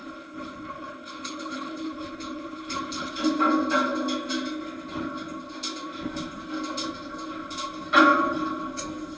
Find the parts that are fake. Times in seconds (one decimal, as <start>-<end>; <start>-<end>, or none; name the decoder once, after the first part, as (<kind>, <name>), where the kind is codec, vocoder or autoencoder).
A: 0.0-3.1 (codec, HILCodec)